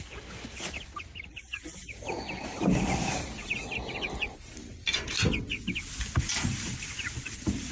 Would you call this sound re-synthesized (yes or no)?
no